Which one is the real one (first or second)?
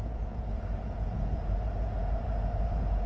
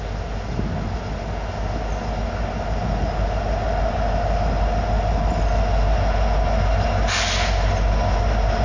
second